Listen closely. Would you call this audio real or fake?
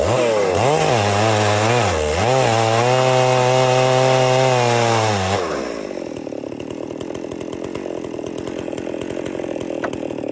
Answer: real